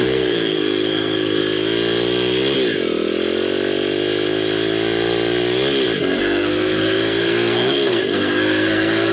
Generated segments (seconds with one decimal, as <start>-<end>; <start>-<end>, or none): 0.0-1.4; 6.0-9.1